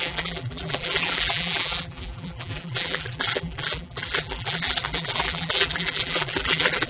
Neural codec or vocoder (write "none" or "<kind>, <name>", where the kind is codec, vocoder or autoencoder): vocoder, BigVGAN v2